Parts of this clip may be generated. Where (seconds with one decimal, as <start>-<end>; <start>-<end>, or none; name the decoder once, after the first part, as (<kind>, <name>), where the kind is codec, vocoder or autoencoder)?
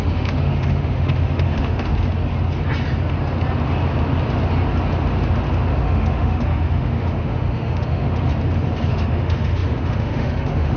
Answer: 0.0-1.9 (autoencoder, DAC-VAE); 5.8-8.3; 8.9-10.8